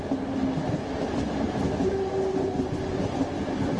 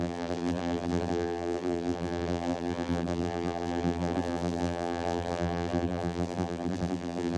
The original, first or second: first